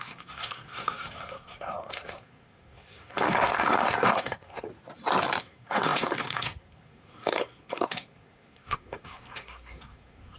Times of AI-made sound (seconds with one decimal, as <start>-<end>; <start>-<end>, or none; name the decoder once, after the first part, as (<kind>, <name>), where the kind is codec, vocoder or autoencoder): 0.0-4.7 (codec, SNAC); 5.4-10.4